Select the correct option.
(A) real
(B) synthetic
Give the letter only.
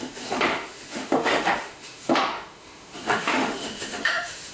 B